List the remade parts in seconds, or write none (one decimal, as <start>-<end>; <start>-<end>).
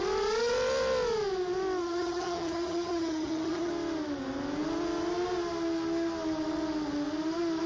1.8-3.7